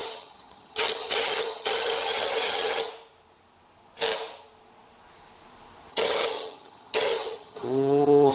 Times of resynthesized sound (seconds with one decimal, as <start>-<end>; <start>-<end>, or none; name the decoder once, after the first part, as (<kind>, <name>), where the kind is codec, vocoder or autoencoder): 0.0-2.9 (vocoder, HiFi-GAN); 5.9-8.3